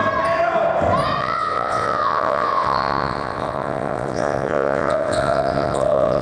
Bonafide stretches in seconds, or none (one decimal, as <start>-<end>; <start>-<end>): 0.0-1.2